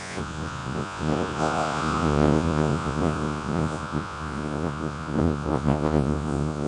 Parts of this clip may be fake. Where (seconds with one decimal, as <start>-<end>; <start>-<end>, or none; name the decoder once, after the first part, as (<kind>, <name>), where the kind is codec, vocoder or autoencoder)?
0.0-6.7 (vocoder, Vocos)